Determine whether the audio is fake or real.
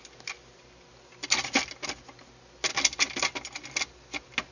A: real